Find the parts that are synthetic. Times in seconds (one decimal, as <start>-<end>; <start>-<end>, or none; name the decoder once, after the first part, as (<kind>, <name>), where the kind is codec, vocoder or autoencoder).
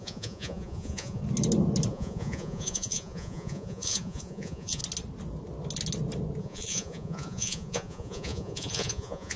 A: 0.0-1.2 (vocoder, Vocos); 1.9-4.8; 6.4-9.4